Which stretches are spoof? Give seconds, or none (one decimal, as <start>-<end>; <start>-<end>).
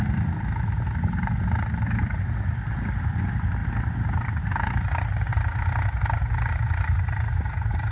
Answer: none